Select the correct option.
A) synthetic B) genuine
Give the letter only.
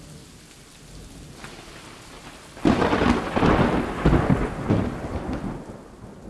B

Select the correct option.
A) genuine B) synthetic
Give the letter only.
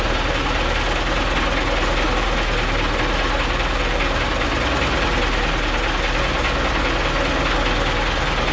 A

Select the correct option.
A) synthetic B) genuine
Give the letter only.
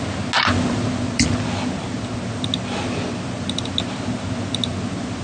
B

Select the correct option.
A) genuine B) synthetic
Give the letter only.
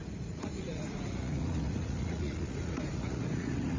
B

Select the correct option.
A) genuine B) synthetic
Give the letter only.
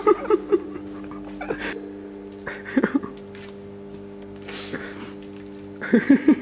A